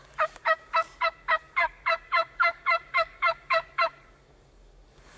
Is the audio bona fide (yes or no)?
no